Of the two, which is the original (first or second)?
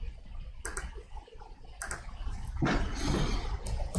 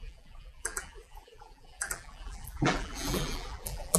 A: first